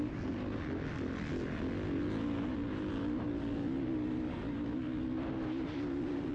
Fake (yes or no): no